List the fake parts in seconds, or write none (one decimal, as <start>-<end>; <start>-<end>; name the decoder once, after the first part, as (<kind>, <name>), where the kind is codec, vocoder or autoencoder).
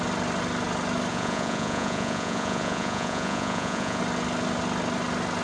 1.1-4.0 (vocoder, Vocos)